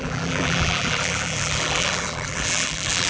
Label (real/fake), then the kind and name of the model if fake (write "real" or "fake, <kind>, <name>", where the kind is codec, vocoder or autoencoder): fake, vocoder, BigVGAN v2